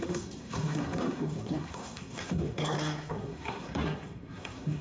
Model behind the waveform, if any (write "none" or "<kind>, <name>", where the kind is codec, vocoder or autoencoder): codec, SNAC